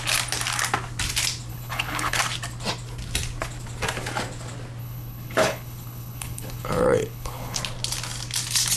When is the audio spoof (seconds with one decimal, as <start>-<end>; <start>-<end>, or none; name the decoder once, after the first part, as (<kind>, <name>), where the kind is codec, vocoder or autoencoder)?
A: 1.5-2.2 (codec, HILCodec); 4.8-7.6